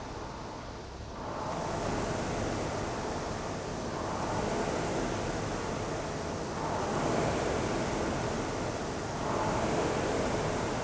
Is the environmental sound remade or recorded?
recorded